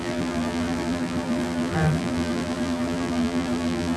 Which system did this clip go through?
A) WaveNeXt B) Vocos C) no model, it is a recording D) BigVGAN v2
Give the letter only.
D